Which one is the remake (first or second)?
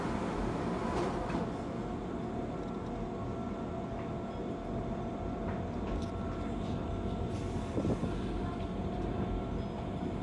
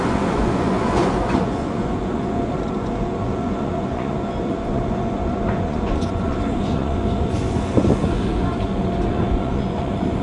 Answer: second